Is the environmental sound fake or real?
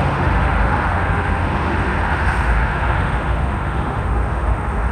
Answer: fake